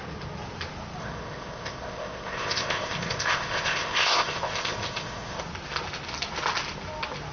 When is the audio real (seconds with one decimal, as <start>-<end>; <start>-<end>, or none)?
0.0-1.0; 5.4-7.3